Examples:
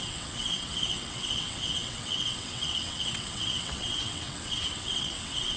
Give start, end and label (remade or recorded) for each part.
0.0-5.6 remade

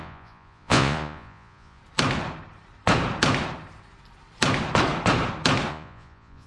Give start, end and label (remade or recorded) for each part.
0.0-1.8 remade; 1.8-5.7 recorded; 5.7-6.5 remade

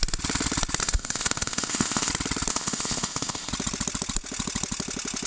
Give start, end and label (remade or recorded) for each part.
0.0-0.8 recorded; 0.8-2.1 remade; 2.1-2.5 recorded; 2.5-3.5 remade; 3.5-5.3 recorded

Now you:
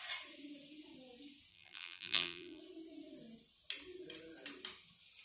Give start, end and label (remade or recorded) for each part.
0.0-1.5 recorded; 1.5-2.6 remade; 2.6-5.2 recorded

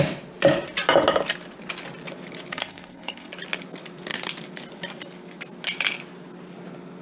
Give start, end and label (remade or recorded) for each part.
0.0-2.5 recorded; 2.5-3.3 remade; 3.3-7.0 recorded

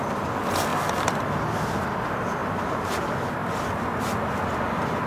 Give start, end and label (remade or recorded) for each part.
0.0-2.4 recorded; 2.4-3.0 remade; 3.0-5.1 recorded